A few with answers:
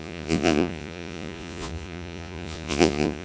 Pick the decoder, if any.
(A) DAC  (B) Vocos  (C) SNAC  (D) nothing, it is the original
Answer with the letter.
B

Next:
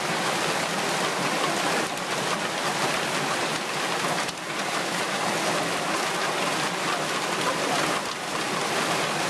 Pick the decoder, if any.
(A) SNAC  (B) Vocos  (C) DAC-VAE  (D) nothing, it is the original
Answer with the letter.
D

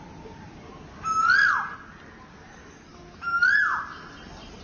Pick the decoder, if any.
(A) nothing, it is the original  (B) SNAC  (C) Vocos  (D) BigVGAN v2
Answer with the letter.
A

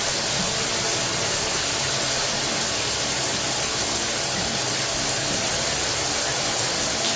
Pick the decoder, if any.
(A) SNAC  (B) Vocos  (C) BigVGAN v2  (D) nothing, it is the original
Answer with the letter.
D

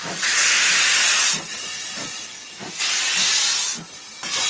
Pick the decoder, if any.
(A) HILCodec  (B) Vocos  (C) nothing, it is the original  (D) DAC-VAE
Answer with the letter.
C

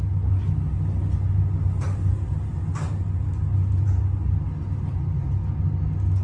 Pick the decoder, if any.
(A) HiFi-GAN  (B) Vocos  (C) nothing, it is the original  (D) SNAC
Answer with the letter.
C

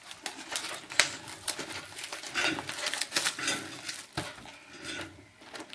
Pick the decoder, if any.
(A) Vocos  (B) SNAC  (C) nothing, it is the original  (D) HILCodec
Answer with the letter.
C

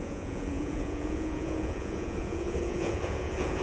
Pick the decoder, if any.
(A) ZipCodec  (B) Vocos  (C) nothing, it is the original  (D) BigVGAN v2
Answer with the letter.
B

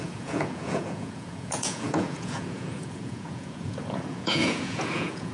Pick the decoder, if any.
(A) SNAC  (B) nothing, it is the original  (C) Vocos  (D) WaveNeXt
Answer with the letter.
C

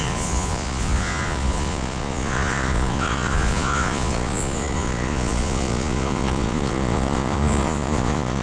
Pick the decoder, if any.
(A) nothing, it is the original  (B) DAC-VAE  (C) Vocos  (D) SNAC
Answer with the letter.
C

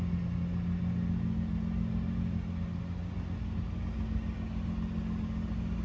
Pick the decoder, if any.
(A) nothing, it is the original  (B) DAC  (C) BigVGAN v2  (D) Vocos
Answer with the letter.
A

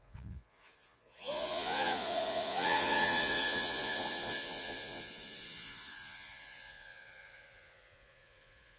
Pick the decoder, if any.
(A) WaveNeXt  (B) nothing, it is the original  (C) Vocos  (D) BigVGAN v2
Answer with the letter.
C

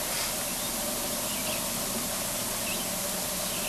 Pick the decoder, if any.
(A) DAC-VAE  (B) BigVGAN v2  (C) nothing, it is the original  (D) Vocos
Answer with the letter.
C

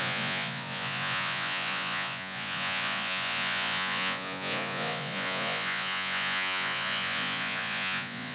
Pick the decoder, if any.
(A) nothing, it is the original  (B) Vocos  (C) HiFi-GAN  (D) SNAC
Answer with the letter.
B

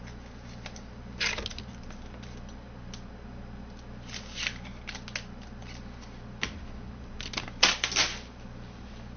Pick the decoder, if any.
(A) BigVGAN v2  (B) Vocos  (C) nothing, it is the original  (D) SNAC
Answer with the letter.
C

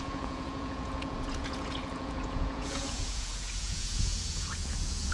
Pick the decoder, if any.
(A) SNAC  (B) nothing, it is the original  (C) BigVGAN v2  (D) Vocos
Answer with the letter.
D